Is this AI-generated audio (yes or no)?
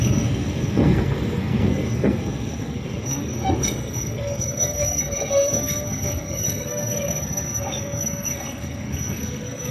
yes